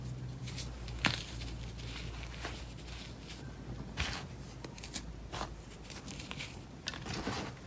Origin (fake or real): real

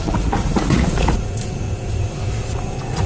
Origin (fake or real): fake